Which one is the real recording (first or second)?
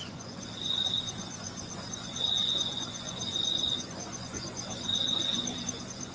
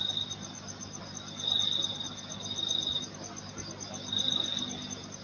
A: second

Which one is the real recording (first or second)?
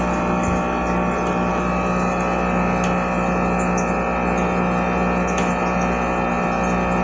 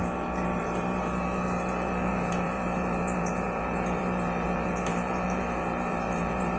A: first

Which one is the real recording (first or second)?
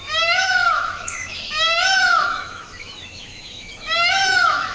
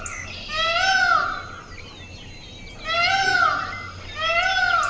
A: second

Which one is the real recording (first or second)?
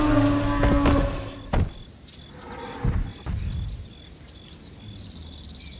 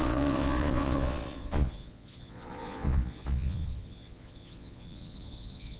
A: first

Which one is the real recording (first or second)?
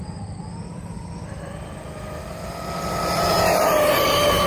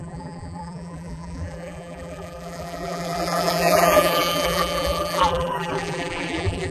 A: first